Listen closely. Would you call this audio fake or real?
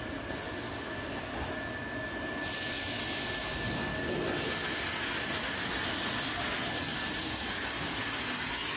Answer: real